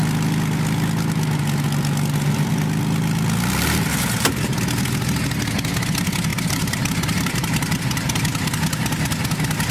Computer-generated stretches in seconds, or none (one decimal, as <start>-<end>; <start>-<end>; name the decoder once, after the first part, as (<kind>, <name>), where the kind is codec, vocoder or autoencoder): 6.3-7.8 (vocoder, BigVGAN v2)